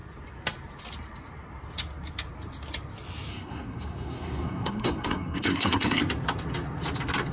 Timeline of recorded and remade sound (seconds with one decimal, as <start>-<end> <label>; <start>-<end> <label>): 0.0-3.3 recorded; 3.3-6.0 remade; 6.0-7.3 recorded